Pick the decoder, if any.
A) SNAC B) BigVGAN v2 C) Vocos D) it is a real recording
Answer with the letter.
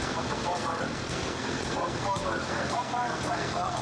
A